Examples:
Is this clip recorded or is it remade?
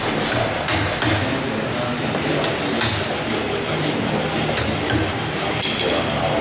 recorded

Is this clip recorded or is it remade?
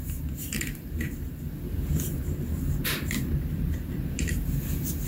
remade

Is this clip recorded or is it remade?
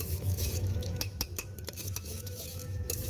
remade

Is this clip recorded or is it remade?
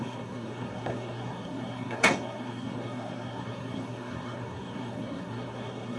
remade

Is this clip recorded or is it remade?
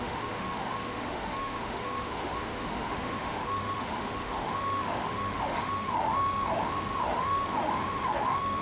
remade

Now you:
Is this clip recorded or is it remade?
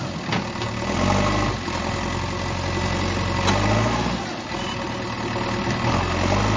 recorded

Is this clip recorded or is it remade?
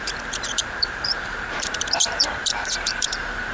remade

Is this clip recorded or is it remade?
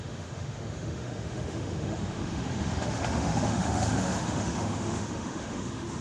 remade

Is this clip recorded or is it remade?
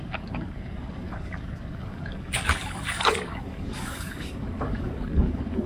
remade